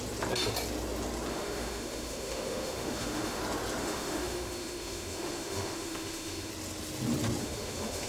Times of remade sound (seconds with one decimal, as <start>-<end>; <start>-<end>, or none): 1.3-3.4; 3.8-6.5; 7.4-8.1